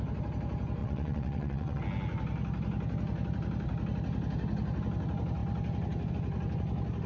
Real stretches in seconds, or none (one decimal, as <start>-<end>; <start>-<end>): 0.0-0.8; 1.8-7.1